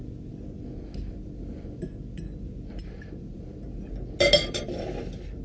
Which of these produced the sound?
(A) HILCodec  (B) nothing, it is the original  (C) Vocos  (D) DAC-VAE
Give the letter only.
B